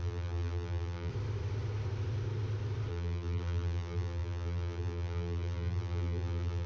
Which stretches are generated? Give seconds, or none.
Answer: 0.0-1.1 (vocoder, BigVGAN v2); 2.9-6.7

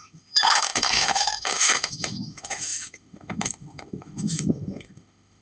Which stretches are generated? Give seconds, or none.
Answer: 0.0-5.4 (autoencoder, DAC-VAE)

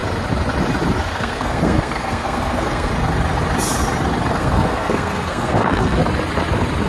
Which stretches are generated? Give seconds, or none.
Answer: 1.1-2.9 (codec, SNAC); 4.3-6.0